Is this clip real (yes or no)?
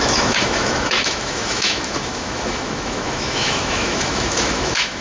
no